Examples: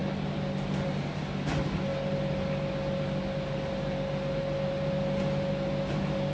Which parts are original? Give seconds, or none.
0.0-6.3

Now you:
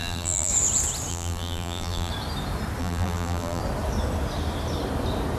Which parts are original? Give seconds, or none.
0.5-1.1; 2.1-2.8; 3.6-5.4

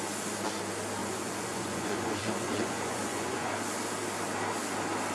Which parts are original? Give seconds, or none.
0.0-1.0; 3.5-5.1